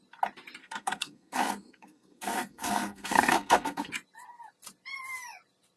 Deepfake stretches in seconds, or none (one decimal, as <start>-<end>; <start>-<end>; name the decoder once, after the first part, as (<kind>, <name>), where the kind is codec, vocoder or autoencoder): 0.6-3.9 (codec, SNAC)